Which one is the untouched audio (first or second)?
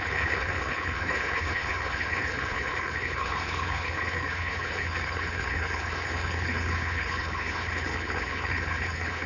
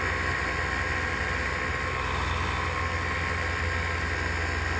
second